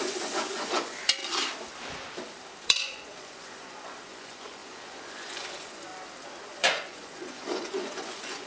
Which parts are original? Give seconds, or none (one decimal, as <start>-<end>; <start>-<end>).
1.2-2.6; 5.9-6.4